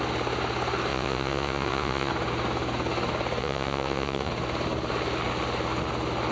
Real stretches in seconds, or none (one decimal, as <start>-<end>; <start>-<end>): 0.0-0.9; 2.1-3.4; 4.3-6.3